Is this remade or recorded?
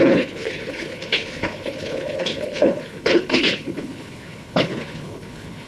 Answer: remade